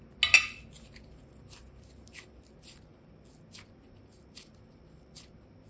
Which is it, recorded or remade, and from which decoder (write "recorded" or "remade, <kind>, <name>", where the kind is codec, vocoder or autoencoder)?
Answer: recorded